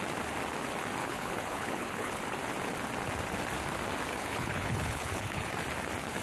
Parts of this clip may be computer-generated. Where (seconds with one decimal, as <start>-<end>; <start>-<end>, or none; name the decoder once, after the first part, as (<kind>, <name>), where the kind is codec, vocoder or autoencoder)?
1.0-2.2 (codec, HILCodec); 4.1-5.5